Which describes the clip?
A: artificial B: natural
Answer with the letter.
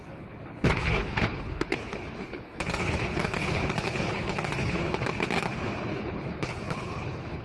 A